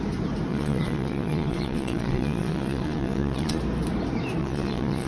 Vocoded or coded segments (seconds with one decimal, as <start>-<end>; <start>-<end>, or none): 0.5-3.6; 4.4-5.1